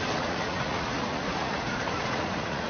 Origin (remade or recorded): remade